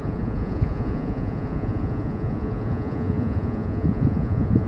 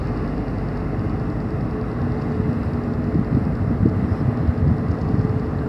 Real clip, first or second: second